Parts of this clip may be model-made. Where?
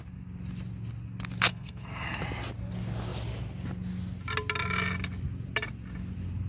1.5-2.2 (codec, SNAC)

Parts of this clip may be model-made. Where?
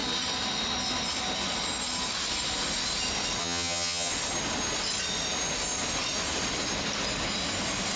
3.4-4.1 (vocoder, HiFi-GAN)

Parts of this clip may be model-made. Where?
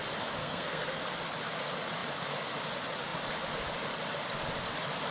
0.4-1.0 (codec, SNAC)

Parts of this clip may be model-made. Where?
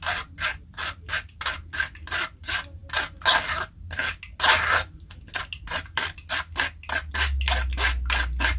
none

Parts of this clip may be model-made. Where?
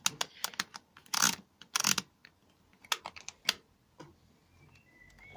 none